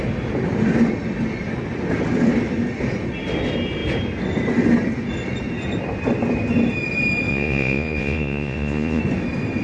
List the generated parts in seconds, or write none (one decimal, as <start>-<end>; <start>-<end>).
7.3-9.0